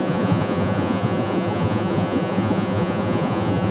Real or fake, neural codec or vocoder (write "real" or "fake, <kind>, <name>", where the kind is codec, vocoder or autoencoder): fake, vocoder, Vocos